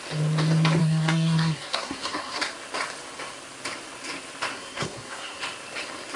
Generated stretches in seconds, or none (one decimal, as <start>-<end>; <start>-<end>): 0.8-2.5; 4.5-5.4